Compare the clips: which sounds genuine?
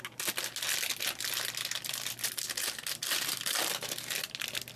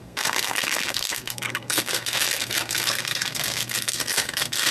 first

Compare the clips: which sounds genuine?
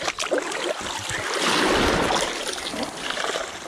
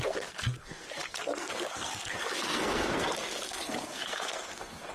first